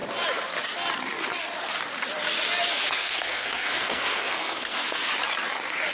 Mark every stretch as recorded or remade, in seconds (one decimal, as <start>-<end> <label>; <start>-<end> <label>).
0.0-2.7 recorded; 2.7-5.1 remade; 5.1-5.9 recorded

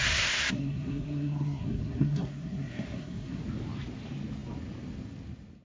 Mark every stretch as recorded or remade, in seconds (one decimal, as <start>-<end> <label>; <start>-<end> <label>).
0.0-3.4 remade; 3.4-5.6 recorded

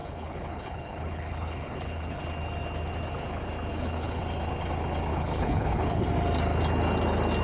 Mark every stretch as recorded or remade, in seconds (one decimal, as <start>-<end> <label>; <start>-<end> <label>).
0.0-2.2 remade; 2.2-3.7 recorded; 3.7-4.2 remade; 4.2-5.1 recorded; 5.1-6.0 remade; 6.0-7.4 recorded

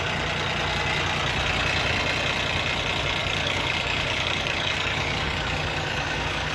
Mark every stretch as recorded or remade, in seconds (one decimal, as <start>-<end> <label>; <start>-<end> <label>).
0.0-3.2 recorded; 3.2-6.5 remade

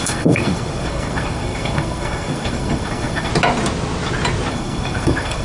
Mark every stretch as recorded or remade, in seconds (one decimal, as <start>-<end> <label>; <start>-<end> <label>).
0.0-3.3 remade; 3.3-4.5 recorded; 4.5-5.4 remade

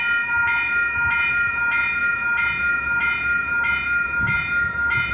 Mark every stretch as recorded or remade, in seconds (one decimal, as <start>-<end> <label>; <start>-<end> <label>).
0.0-5.1 recorded

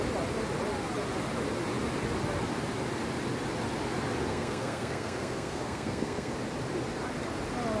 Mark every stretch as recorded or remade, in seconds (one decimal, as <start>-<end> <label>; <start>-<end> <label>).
0.0-4.3 recorded; 4.3-6.3 remade; 6.3-7.8 recorded

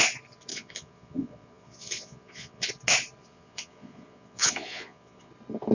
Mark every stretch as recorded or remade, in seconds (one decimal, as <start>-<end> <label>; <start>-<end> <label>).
0.0-0.5 recorded; 0.5-2.7 remade; 2.7-3.2 recorded; 3.2-5.3 remade; 5.3-5.7 recorded